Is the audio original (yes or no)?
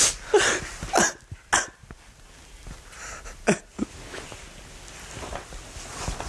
yes